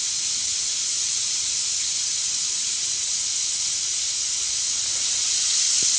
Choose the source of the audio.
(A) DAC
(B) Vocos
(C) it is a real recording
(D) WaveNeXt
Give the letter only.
B